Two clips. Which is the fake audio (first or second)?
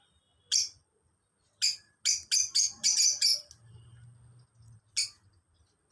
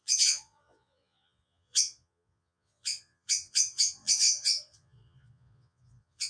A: second